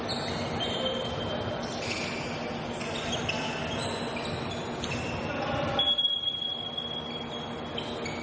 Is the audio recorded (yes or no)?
yes